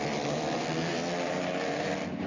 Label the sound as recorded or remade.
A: remade